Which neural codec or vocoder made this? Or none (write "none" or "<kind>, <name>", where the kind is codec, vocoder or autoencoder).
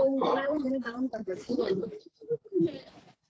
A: vocoder, BigVGAN v2